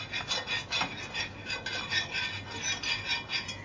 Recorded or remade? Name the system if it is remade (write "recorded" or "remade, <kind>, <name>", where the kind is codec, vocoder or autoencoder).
recorded